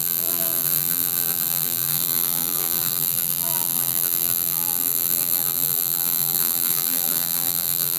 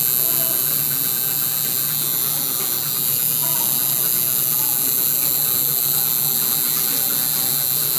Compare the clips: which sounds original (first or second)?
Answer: second